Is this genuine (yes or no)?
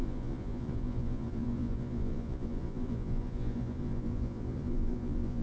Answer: no